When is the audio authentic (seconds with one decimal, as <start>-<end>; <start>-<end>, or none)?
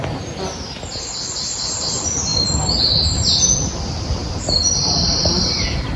0.0-6.0